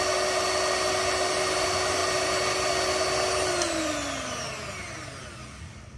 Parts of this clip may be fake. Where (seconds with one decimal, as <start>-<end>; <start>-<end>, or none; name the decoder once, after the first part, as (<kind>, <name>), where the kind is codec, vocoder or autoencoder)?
none